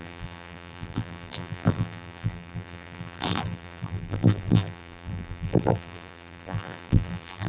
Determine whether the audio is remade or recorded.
remade